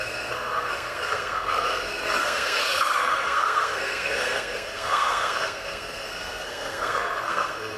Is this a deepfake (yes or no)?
yes